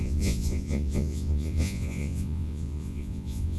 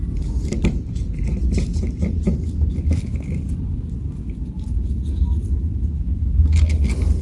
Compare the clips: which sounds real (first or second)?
second